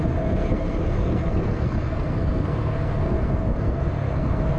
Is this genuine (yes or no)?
no